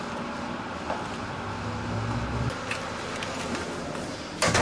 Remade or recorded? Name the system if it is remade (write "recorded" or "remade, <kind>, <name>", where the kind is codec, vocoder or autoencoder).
recorded